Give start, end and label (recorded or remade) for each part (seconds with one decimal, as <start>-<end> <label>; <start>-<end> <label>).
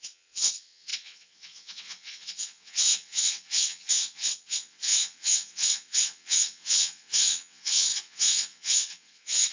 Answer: 0.0-9.5 remade